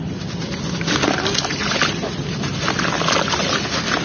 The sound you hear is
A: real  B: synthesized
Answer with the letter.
A